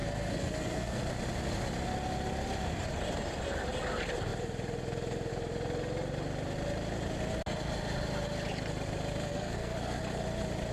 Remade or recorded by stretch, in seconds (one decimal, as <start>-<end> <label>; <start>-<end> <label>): 0.0-1.0 remade; 1.0-9.3 recorded; 9.3-10.0 remade; 10.0-10.7 recorded